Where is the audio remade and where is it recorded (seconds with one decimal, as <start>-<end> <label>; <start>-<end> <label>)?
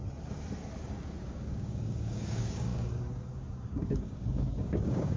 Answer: 0.0-0.9 recorded; 0.9-5.2 remade